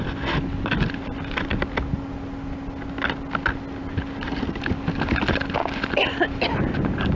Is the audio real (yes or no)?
yes